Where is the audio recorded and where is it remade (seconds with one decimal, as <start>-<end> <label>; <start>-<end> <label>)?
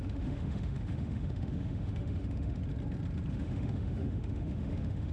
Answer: 0.0-2.6 remade; 2.6-3.3 recorded; 3.3-5.1 remade